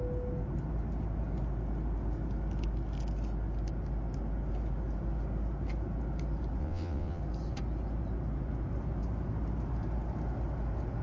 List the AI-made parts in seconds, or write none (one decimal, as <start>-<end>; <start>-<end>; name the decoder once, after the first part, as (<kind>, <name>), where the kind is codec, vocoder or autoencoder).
6.6-7.2 (vocoder, WaveNeXt)